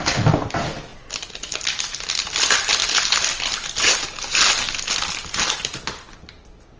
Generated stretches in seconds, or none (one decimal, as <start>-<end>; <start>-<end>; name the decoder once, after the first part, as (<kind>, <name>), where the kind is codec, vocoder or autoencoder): none